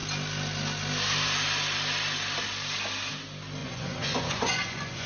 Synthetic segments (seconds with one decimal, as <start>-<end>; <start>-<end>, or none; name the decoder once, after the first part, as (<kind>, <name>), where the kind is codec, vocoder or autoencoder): 3.6-5.1 (vocoder, Vocos)